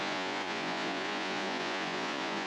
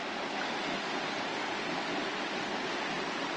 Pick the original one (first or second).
second